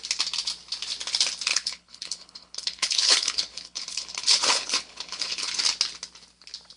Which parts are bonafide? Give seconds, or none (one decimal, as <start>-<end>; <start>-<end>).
0.0-1.5; 5.6-6.8

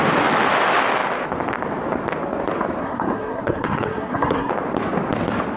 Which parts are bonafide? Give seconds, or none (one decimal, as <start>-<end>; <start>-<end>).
0.0-2.8; 4.5-5.6

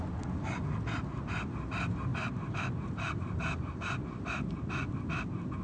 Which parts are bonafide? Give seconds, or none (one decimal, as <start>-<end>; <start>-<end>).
0.0-2.1; 5.0-5.6

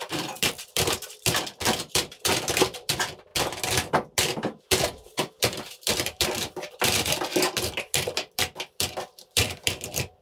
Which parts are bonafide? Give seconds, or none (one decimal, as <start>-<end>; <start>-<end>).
3.3-4.6